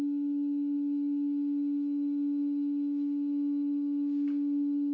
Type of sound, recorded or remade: remade